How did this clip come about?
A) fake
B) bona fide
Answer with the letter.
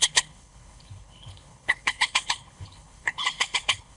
A